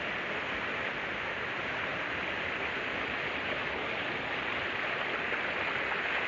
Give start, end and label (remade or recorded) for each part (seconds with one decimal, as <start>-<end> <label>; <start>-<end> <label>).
0.0-6.3 recorded